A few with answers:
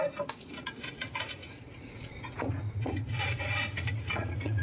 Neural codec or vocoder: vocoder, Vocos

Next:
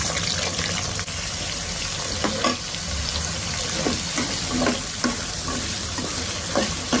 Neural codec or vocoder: none